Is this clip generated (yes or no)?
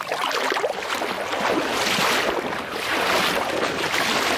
no